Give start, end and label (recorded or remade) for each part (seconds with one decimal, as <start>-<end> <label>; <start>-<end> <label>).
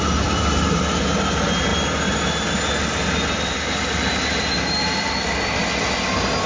0.0-6.5 recorded